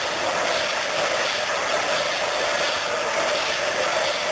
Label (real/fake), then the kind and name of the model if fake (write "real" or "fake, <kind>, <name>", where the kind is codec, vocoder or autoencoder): real